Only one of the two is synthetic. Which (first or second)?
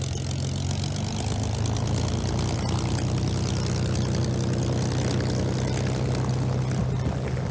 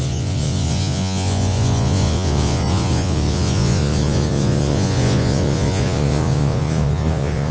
second